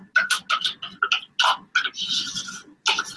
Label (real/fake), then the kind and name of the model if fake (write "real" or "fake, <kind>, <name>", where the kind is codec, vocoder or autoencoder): real